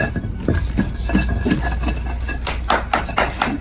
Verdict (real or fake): real